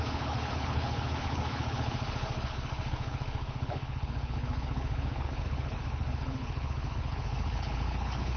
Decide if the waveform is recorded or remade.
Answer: remade